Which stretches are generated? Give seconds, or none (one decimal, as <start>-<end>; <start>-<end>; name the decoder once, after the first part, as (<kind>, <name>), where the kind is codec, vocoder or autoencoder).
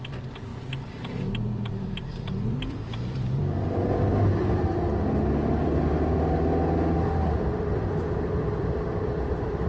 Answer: 0.0-0.5 (vocoder, BigVGAN v2); 1.3-4.1; 8.0-9.7